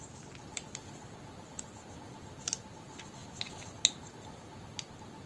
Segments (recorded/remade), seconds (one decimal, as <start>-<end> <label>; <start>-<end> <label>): 0.0-5.3 recorded